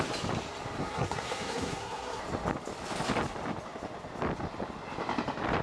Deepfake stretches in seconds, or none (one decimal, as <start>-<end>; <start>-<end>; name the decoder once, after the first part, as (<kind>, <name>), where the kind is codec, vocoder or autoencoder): 0.8-2.2 (codec, SNAC)